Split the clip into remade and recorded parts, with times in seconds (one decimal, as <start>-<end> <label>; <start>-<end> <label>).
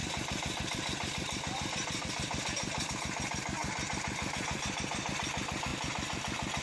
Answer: 0.0-2.9 remade; 2.9-3.6 recorded; 3.6-5.1 remade; 5.1-6.6 recorded